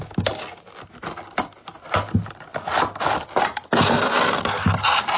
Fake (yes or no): no